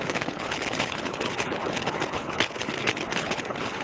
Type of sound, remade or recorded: remade